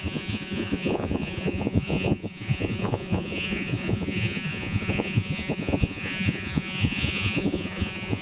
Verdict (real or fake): fake